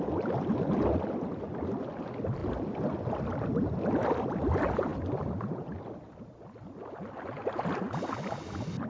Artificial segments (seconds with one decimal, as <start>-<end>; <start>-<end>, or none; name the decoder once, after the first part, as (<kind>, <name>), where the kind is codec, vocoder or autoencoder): 2.4-3.2 (vocoder, BigVGAN v2); 4.9-6.2